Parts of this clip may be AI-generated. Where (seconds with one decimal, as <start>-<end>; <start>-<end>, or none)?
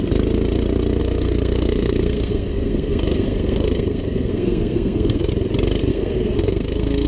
1.0-5.3; 5.9-7.1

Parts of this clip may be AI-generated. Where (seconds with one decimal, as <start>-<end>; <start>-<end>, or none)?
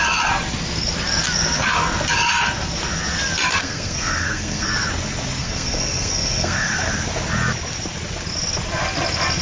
3.6-4.7; 5.4-6.9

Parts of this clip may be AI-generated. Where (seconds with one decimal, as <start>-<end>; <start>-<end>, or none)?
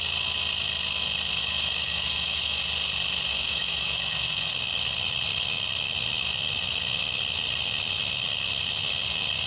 1.4-2.6; 3.3-4.5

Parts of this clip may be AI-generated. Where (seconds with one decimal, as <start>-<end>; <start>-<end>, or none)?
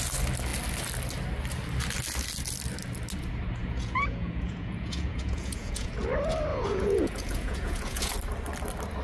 3.6-5.9; 6.5-8.1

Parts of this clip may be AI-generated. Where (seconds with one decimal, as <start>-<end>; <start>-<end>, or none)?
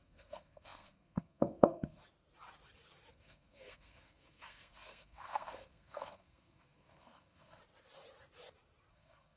0.0-2.0; 3.1-7.6; 8.9-9.4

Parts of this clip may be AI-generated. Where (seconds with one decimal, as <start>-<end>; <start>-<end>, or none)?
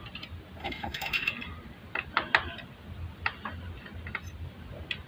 0.6-1.3